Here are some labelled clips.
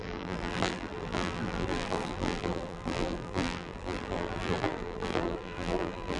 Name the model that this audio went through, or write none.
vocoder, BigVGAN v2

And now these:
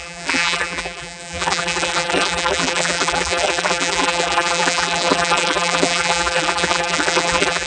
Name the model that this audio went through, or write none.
vocoder, BigVGAN v2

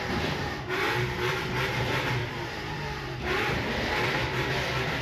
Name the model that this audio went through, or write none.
vocoder, BigVGAN v2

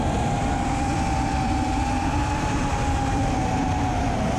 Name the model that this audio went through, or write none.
vocoder, BigVGAN v2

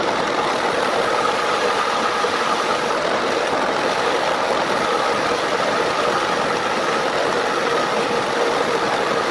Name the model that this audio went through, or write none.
none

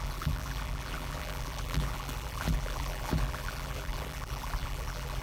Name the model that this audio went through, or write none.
vocoder, BigVGAN v2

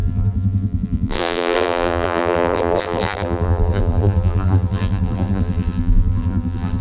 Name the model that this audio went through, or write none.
vocoder, BigVGAN v2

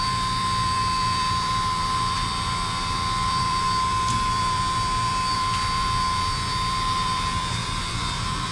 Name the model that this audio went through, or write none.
vocoder, BigVGAN v2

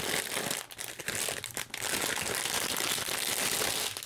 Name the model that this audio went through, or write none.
none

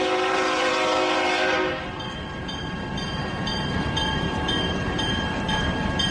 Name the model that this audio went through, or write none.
vocoder, BigVGAN v2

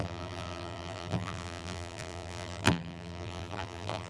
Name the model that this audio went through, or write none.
vocoder, BigVGAN v2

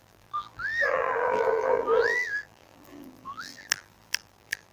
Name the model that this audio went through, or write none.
vocoder, BigVGAN v2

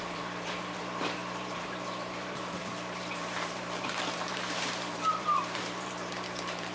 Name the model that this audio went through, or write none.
vocoder, BigVGAN v2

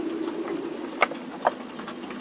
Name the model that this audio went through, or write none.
none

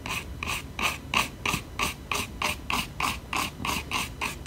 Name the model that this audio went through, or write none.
none